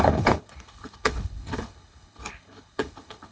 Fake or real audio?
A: fake